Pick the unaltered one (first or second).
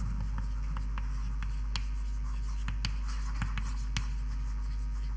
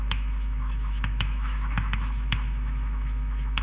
first